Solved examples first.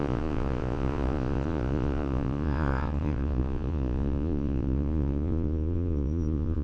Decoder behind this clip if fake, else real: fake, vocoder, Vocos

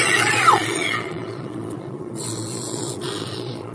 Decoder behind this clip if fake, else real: fake, vocoder, Vocos